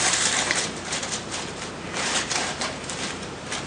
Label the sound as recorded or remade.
remade